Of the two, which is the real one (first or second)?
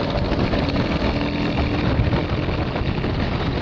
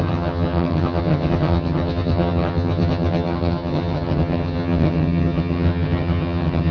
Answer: first